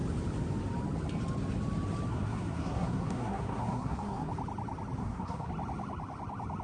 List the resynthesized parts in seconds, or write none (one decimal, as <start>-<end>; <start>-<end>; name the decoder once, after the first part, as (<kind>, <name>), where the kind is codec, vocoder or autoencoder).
2.1-4.3 (codec, SNAC); 5.0-5.5